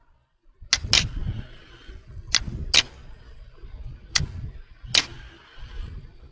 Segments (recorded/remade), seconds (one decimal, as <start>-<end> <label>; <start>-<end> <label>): 0.0-6.3 recorded